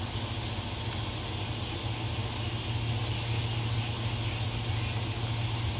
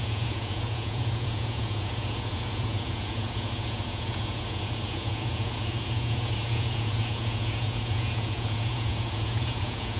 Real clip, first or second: first